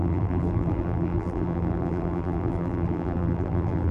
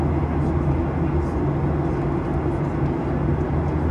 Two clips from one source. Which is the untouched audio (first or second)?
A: second